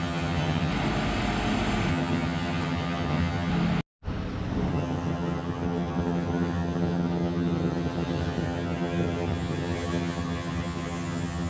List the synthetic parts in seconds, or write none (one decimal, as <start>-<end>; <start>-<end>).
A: 0.0-0.7; 1.9-3.5; 4.7-11.5